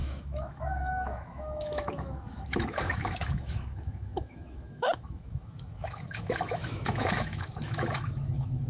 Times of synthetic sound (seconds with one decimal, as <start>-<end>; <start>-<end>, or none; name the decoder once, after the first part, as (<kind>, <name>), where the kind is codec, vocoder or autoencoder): 0.0-8.7 (autoencoder, DAC-VAE)